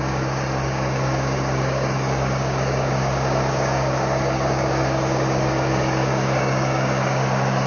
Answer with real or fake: fake